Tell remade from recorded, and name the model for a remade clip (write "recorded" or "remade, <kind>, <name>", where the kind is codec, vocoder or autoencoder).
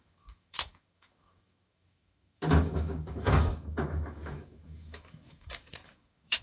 remade, autoencoder, DAC-VAE